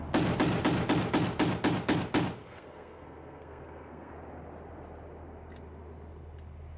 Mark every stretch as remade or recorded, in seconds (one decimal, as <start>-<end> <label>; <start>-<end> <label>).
0.0-2.4 recorded; 2.4-4.1 remade; 4.1-6.8 recorded